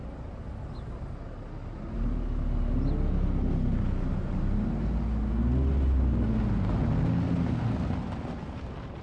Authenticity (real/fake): real